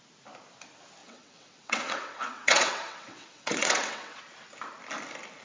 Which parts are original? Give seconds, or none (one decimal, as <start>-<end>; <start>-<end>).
0.0-1.0; 4.2-5.4